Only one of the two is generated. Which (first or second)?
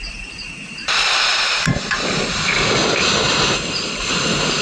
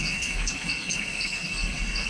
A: second